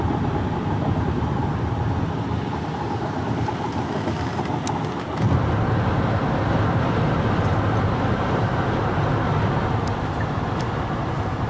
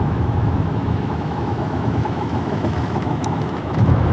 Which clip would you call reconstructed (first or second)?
second